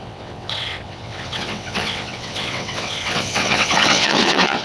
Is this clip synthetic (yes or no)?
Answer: yes